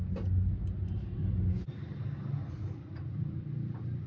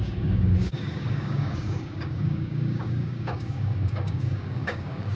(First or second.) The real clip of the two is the first